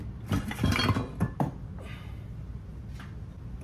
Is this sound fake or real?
real